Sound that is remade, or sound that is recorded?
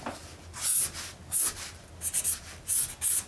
recorded